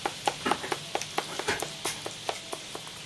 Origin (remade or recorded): recorded